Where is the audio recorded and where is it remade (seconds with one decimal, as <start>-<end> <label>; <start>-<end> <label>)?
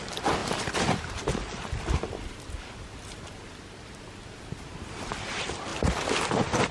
0.0-6.7 recorded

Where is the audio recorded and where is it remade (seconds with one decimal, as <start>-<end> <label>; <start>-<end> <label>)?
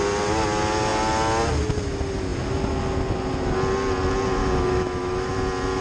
0.0-4.4 recorded; 4.4-5.3 remade; 5.3-5.8 recorded